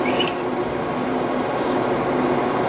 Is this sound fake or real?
real